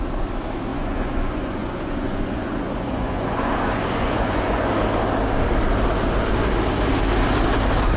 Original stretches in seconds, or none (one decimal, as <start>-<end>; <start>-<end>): 0.0-0.7; 4.7-8.0